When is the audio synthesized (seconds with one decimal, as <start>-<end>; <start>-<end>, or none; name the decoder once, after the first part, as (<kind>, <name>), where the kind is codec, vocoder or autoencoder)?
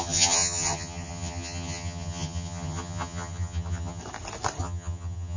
0.0-4.0 (vocoder, HiFi-GAN); 4.6-5.4